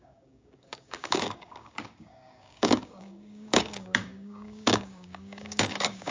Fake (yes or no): yes